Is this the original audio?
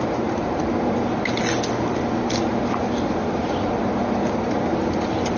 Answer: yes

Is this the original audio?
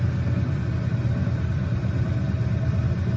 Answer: yes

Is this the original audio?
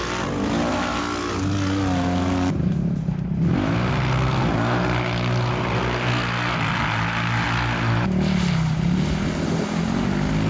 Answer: yes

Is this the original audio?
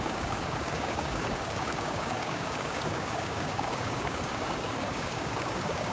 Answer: no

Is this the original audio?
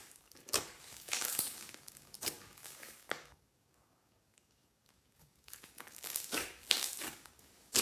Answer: no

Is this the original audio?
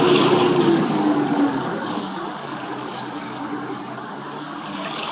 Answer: no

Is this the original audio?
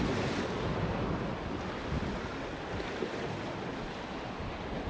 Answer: yes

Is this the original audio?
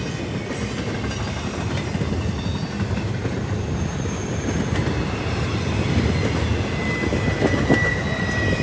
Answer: yes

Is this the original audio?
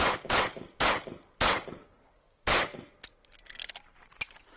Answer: yes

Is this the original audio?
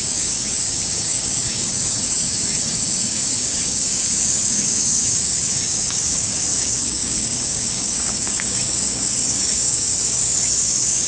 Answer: no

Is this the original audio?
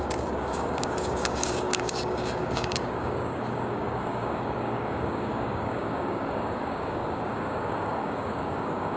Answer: no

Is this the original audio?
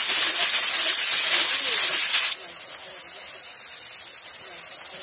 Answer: yes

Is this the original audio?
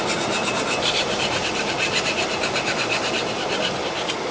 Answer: yes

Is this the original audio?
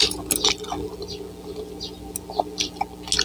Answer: yes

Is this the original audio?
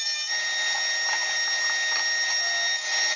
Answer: yes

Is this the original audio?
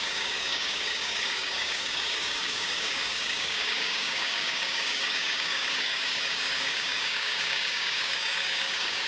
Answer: no